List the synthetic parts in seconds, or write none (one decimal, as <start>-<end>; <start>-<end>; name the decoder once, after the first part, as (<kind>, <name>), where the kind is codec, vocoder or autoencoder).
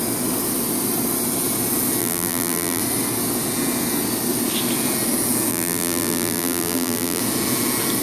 2.0-2.8 (vocoder, BigVGAN v2); 5.5-7.2